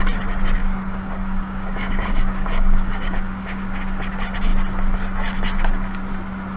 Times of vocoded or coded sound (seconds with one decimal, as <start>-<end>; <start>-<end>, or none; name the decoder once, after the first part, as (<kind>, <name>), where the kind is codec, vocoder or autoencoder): 0.6-3.6 (codec, DAC)